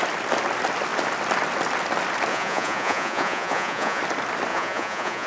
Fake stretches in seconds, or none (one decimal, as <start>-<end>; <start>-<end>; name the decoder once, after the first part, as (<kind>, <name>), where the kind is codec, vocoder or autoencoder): 2.3-4.0 (vocoder, Vocos); 4.5-5.3